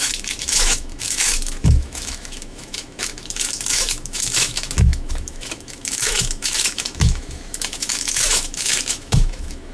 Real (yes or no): no